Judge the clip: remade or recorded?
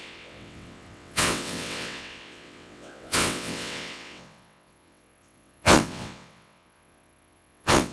remade